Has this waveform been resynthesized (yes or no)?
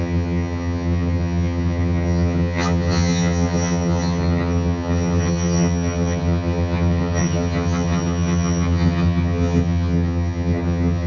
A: yes